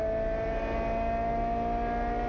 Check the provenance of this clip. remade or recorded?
recorded